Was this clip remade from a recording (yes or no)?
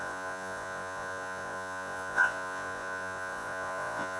yes